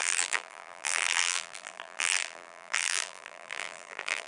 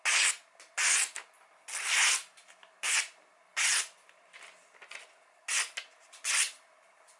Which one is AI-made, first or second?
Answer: first